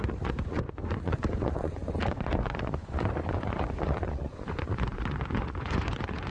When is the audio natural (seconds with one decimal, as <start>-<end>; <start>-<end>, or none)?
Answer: none